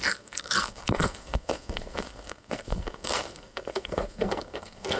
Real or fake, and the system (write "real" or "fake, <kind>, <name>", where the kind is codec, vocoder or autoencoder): fake, codec, SNAC